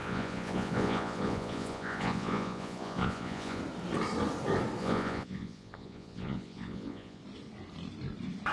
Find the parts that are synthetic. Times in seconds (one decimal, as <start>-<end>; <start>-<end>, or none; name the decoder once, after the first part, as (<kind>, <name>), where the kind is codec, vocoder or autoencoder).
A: 0.0-3.6 (vocoder, Vocos); 4.8-7.2